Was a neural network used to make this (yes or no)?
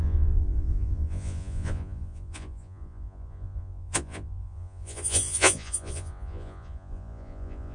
yes